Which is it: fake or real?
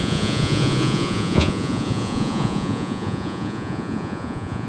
fake